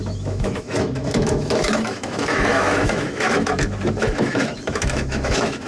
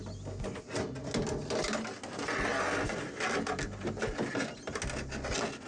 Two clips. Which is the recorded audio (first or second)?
second